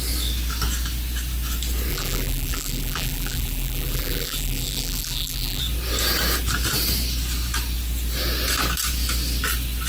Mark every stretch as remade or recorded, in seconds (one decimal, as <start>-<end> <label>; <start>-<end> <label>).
0.0-1.9 recorded; 1.9-5.6 remade; 5.6-9.9 recorded